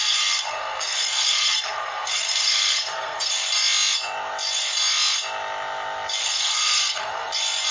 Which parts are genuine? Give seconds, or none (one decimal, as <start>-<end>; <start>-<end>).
3.3-6.2; 7.3-7.7